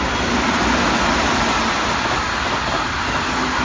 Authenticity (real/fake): real